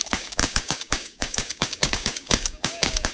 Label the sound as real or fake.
fake